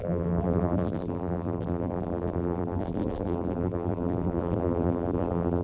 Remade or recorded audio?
remade